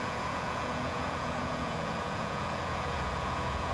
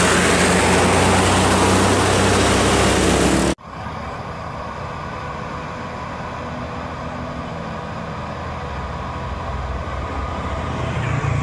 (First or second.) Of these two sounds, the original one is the second